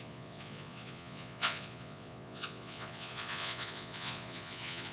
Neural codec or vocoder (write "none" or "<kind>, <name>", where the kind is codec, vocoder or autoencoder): vocoder, Vocos